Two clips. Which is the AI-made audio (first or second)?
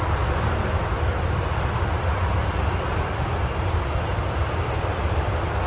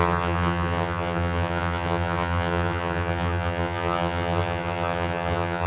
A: second